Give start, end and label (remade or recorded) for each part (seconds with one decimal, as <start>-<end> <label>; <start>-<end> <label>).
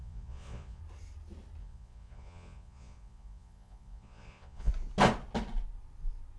0.0-0.8 remade; 0.8-1.6 recorded; 1.6-4.7 remade; 4.7-6.4 recorded